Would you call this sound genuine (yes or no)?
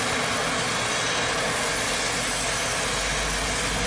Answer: yes